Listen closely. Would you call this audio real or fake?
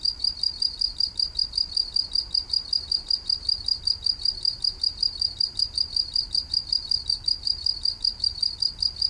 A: fake